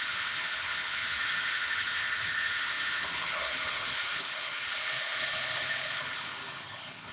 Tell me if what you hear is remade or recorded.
remade